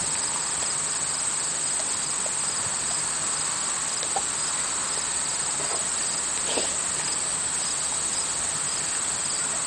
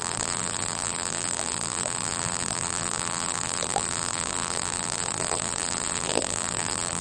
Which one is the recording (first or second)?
first